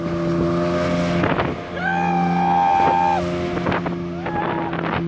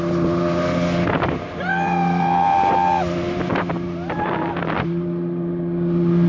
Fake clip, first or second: second